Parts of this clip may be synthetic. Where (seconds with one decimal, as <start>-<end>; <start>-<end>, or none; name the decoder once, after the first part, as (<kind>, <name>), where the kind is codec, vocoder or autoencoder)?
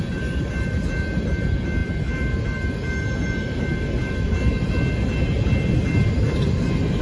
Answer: none